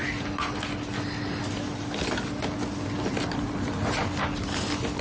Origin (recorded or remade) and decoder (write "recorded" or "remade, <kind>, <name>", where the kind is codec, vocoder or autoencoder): recorded